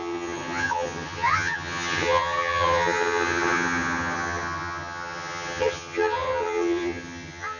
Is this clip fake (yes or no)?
yes